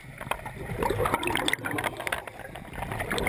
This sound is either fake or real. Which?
real